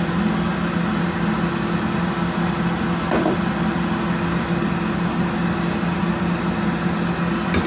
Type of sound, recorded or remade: recorded